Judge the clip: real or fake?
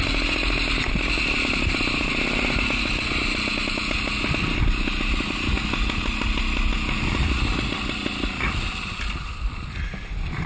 real